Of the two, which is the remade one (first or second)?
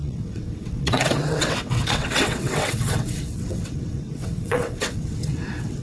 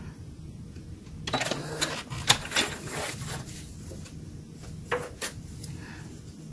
first